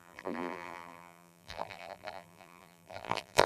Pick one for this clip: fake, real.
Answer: fake